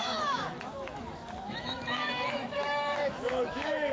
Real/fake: fake